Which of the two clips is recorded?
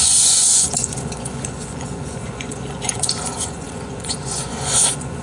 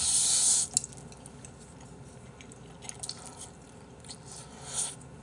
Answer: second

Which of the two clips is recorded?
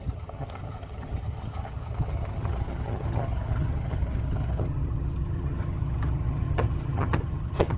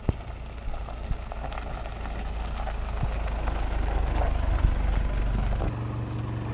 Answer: second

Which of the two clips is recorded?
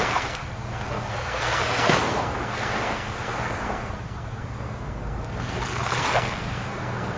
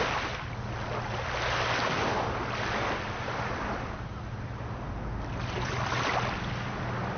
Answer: second